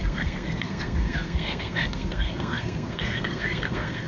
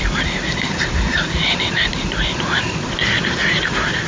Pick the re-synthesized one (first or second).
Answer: first